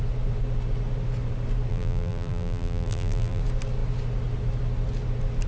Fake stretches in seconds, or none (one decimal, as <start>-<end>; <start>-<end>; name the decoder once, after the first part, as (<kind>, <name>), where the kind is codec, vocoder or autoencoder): 1.7-3.4 (vocoder, BigVGAN v2)